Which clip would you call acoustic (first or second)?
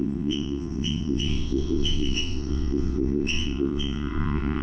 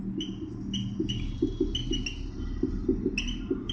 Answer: second